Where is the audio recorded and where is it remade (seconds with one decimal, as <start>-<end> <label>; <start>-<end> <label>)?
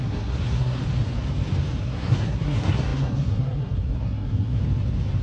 0.0-0.8 remade; 0.8-1.8 recorded; 1.8-4.6 remade; 4.6-5.2 recorded